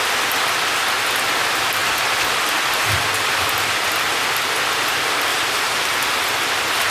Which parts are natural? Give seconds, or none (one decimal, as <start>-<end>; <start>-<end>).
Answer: 0.0-5.3; 5.8-6.9